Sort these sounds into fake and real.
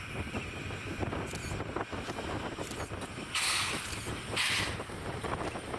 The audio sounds real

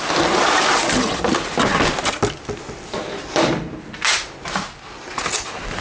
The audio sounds real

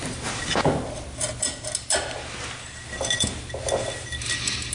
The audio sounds real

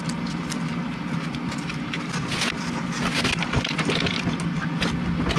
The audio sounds real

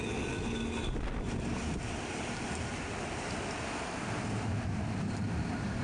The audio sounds real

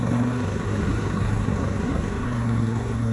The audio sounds fake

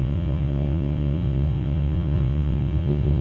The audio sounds fake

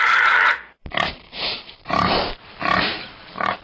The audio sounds fake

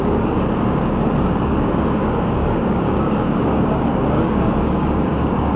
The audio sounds fake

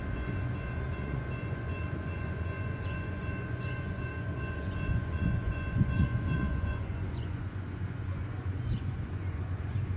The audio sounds fake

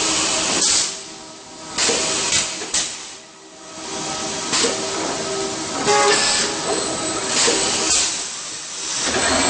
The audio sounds real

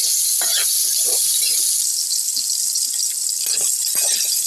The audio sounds real